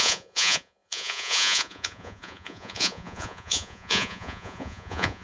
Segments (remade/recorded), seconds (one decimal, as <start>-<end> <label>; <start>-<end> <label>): 0.0-5.2 remade